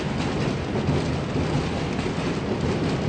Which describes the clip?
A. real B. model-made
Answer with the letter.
A